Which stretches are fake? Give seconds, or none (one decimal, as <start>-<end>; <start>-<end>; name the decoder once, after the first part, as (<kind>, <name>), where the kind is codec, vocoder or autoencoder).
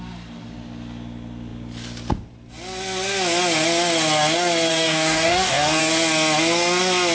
4.7-5.8 (codec, DAC)